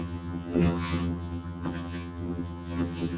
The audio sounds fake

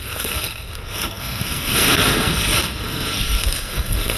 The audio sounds fake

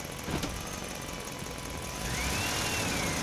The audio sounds real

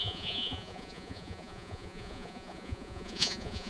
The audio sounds fake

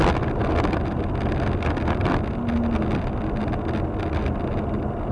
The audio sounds real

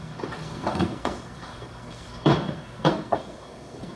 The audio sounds fake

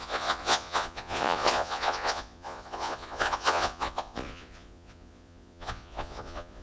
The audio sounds fake